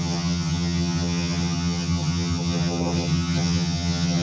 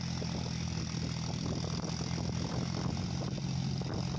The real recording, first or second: second